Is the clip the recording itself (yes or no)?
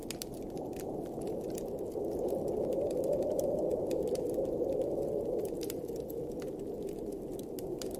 no